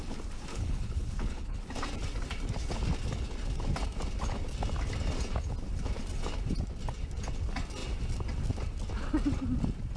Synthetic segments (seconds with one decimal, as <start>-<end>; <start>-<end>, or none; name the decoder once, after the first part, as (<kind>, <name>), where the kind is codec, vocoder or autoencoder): 0.5-1.6 (codec, HILCodec)